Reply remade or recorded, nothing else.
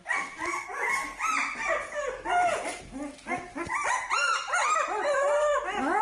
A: recorded